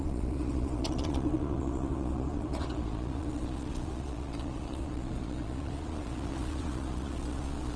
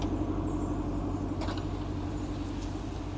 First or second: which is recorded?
second